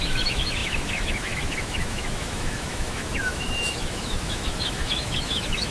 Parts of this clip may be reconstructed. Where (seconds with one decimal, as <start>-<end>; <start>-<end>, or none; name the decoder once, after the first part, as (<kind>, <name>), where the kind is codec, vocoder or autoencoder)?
0.0-5.7 (autoencoder, DAC-VAE)